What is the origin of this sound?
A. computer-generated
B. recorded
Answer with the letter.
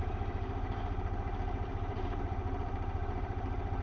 A